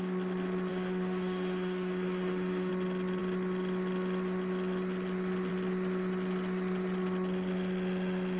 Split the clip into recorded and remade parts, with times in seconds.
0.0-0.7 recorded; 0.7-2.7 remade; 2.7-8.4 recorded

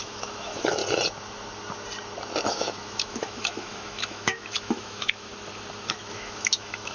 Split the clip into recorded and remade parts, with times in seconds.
0.0-0.8 remade; 0.8-2.5 recorded; 2.5-5.3 remade; 5.3-5.9 recorded; 5.9-6.9 remade

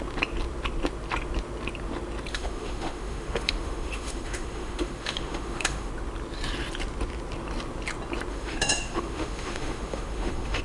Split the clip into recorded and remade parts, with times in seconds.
0.0-2.3 recorded; 2.3-5.9 remade; 5.9-8.3 recorded; 8.3-10.6 remade

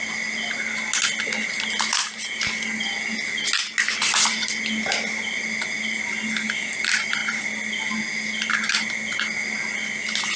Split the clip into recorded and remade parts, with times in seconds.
0.0-10.4 recorded

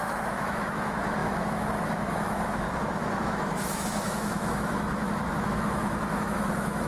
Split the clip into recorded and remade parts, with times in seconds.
0.0-6.9 remade

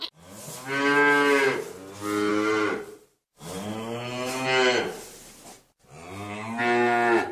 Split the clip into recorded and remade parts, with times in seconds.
0.0-7.3 recorded